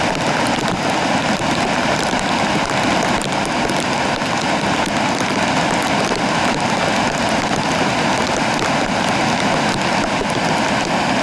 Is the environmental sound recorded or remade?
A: recorded